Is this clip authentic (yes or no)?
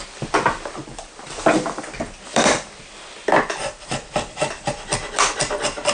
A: no